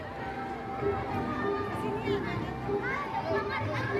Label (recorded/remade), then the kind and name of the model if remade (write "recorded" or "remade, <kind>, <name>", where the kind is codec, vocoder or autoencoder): recorded